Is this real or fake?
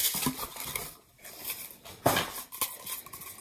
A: real